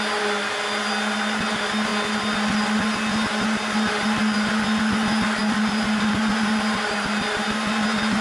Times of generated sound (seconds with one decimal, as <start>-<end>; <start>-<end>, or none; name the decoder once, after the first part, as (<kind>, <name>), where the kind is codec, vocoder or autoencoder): 5.4-6.2 (vocoder, BigVGAN v2)